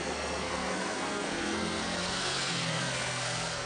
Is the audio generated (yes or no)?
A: yes